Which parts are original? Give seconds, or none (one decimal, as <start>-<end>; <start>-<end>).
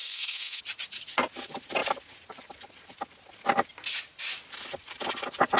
0.6-5.6